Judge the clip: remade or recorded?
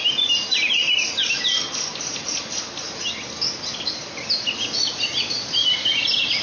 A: recorded